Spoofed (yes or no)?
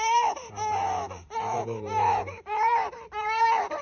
yes